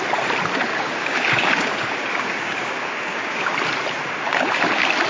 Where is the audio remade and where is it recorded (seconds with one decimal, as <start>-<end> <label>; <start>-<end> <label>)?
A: 0.0-0.7 recorded; 0.7-3.5 remade; 3.5-5.1 recorded